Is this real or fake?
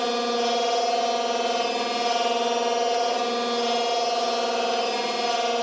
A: real